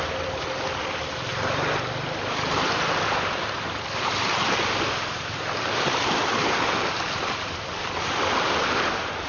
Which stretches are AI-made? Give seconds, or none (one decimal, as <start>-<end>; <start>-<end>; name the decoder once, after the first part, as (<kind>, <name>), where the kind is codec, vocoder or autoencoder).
none